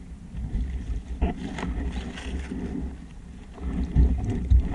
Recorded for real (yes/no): yes